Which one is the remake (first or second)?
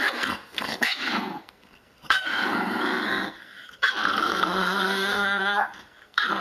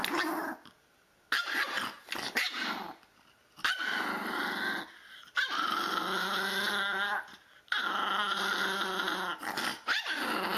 first